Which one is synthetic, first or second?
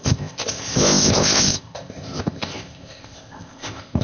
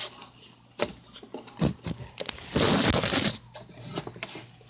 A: first